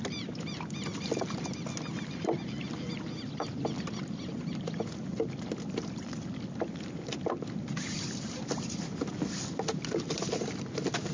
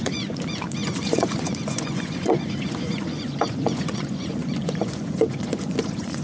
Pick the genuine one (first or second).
first